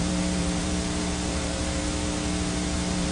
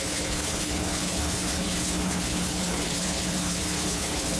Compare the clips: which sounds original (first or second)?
first